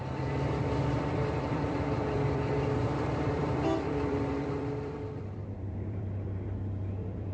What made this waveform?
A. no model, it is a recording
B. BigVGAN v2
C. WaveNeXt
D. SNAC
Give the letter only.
B